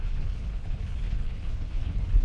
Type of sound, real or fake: fake